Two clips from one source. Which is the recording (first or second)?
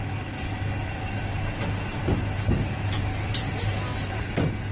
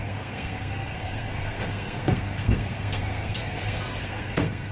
first